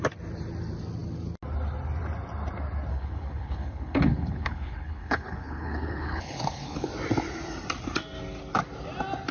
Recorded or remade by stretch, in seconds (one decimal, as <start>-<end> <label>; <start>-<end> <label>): 0.0-2.9 recorded; 2.9-6.9 remade; 6.9-9.3 recorded